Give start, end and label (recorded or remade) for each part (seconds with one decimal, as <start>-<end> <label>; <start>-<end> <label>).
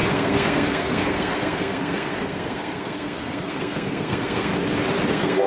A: 0.0-4.5 remade; 4.5-5.1 recorded; 5.1-5.5 remade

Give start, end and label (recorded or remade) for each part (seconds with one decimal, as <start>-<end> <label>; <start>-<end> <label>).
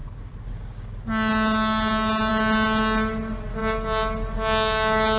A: 0.0-5.2 recorded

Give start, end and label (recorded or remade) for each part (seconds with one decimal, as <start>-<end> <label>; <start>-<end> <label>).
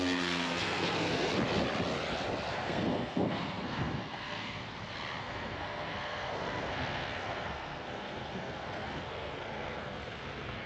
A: 0.0-1.3 remade; 1.3-2.5 recorded; 2.5-4.6 remade; 4.6-5.2 recorded; 5.2-10.7 remade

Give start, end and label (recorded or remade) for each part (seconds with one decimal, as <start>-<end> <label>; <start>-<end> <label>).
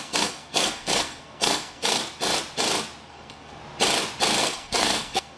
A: 0.0-2.0 remade; 2.0-3.1 recorded; 3.1-3.6 remade; 3.6-4.4 recorded; 4.4-5.4 remade